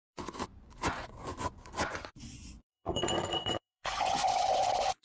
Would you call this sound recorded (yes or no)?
no